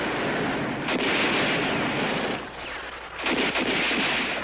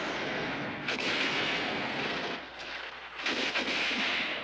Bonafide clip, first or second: first